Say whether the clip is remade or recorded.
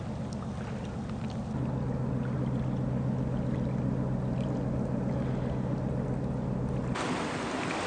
recorded